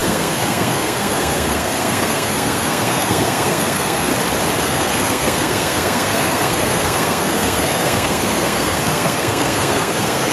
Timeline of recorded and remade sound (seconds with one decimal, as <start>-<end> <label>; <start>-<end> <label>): 0.0-4.1 remade; 4.1-4.6 recorded; 4.6-10.3 remade